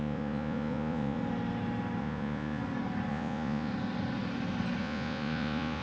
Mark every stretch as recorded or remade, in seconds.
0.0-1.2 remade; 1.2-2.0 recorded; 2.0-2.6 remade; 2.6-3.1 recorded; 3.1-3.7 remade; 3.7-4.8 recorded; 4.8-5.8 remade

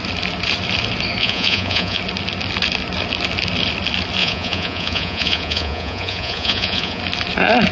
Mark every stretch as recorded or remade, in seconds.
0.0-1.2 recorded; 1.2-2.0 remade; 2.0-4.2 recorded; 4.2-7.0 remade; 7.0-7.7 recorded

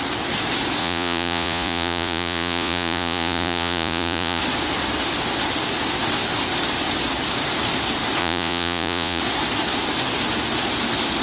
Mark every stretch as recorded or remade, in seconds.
0.0-0.8 recorded; 0.8-4.4 remade; 4.4-8.2 recorded; 8.2-9.2 remade; 9.2-11.2 recorded

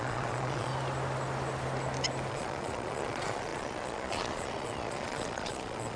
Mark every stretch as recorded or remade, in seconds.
0.0-0.7 remade; 0.7-2.3 recorded; 2.3-6.0 remade

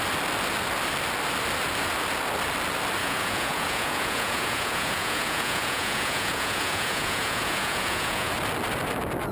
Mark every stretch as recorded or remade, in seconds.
0.0-3.0 recorded; 3.0-8.3 remade; 8.3-9.3 recorded

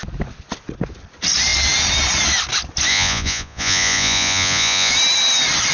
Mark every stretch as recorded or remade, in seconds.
0.0-2.9 recorded; 2.9-4.9 remade; 4.9-5.7 recorded

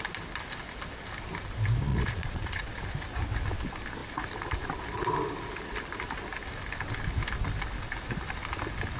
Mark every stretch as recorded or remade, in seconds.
0.0-1.9 recorded; 1.9-2.7 remade; 2.7-9.0 recorded